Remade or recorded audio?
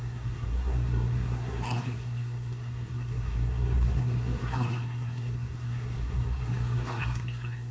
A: remade